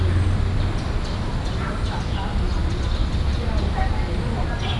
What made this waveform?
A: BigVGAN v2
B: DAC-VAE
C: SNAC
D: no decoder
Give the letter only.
D